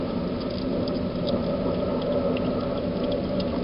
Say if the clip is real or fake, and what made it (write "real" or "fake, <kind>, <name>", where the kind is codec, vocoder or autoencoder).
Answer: real